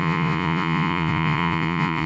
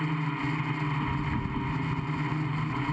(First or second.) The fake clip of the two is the first